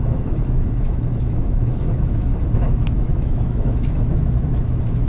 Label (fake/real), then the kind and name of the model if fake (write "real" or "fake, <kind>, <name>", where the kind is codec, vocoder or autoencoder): fake, autoencoder, DAC-VAE